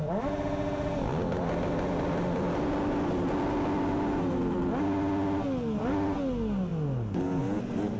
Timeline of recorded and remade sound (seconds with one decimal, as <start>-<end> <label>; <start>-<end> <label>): 0.0-8.0 recorded